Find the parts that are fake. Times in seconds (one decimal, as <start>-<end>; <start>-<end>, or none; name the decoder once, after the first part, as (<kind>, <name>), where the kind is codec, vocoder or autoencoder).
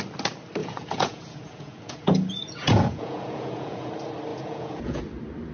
0.6-3.9 (vocoder, Vocos); 4.3-5.0